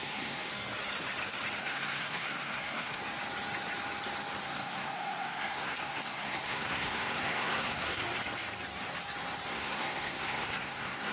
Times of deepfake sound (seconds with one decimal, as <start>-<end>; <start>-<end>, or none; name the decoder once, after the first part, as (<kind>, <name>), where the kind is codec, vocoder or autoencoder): 0.0-0.5 (codec, SNAC); 1.6-3.0; 4.4-8.0; 9.5-11.1